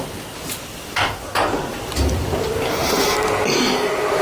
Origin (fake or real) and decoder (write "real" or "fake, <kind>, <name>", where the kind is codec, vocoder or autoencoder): real